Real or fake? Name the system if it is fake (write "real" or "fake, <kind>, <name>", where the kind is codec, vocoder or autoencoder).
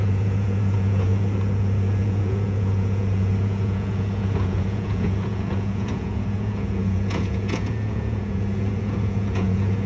fake, vocoder, Vocos